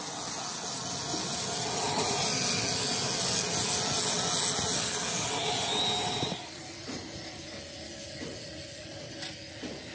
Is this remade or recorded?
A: recorded